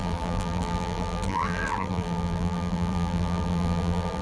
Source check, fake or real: fake